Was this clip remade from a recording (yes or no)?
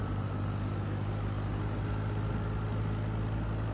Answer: no